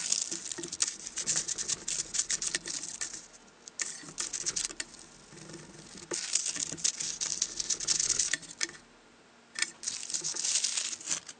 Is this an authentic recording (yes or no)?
yes